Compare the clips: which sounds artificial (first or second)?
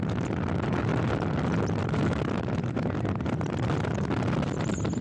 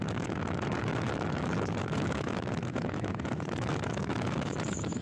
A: second